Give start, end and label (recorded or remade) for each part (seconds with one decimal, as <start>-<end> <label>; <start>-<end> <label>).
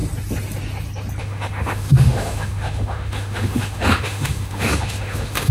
0.0-1.2 recorded; 1.2-5.5 remade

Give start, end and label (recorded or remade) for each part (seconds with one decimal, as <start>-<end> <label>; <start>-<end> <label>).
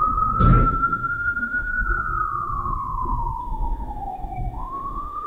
0.0-0.6 recorded; 0.6-1.7 remade; 1.7-3.4 recorded; 3.4-5.3 remade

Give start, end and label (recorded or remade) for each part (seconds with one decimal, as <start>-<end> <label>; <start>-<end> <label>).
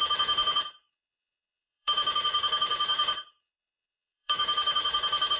0.0-5.4 remade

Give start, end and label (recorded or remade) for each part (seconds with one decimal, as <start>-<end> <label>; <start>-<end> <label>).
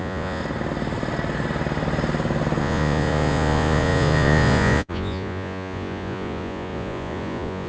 0.0-0.4 remade; 0.4-2.6 recorded; 2.6-7.7 remade